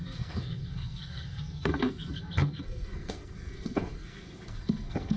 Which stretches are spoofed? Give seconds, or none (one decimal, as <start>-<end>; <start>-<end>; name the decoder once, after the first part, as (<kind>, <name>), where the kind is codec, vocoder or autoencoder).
0.0-5.2 (codec, SNAC)